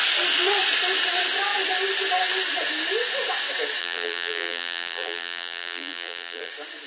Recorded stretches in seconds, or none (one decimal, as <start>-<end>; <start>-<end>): 0.0-3.8; 6.5-6.9